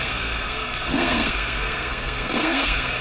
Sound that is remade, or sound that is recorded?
remade